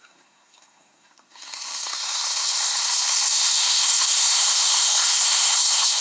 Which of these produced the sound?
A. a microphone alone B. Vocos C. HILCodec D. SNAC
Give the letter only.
D